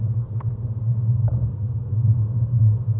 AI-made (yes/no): yes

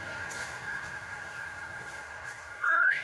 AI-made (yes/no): yes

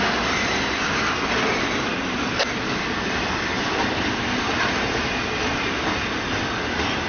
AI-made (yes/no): no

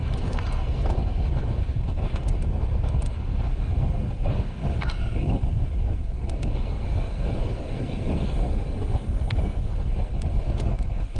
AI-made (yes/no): yes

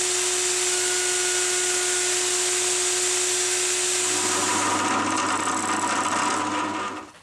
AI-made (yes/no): no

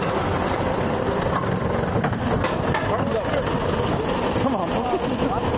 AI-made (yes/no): no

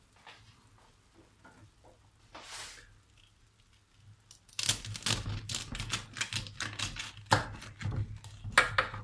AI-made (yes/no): no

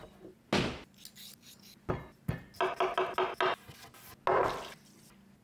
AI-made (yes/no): no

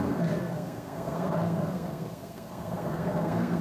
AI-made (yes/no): yes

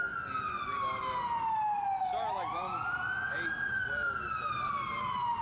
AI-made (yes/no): no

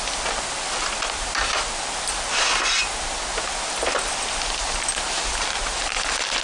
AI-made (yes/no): no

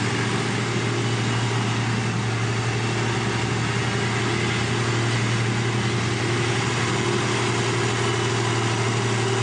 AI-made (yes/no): no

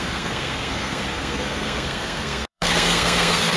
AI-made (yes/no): yes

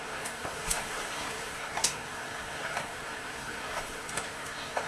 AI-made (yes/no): yes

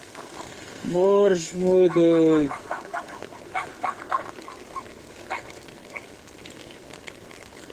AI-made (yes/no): yes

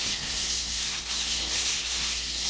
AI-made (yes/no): yes